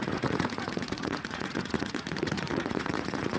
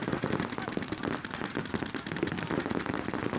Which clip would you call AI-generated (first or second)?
first